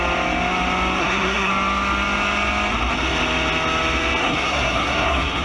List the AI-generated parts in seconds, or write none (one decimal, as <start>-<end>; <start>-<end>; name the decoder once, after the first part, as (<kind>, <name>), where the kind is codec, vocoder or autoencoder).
1.0-1.5 (codec, SNAC); 4.2-5.4

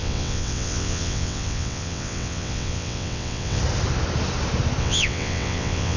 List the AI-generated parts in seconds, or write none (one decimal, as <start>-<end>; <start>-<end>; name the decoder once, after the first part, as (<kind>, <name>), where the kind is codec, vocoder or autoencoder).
0.0-3.6 (vocoder, WaveNeXt); 4.8-6.0

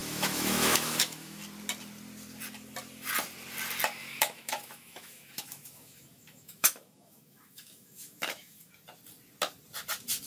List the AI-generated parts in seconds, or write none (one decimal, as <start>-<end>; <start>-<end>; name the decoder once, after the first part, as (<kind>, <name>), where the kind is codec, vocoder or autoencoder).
0.0-1.4 (autoencoder, DAC-VAE); 4.0-8.7

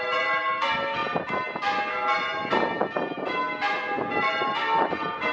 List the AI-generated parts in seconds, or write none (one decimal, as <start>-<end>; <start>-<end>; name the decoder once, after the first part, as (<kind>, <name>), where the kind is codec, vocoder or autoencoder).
none

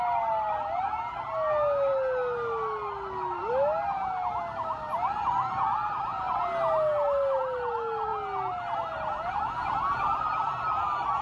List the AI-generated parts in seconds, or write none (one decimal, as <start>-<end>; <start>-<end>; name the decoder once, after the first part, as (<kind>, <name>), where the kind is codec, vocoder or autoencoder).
none